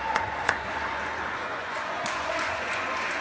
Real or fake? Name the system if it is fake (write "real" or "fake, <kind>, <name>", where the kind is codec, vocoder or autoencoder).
fake, vocoder, Vocos